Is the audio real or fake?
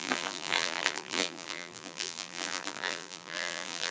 fake